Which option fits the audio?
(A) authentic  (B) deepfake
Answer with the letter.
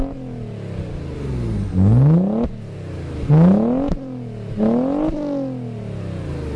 A